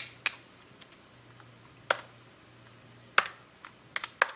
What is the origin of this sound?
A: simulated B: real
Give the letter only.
B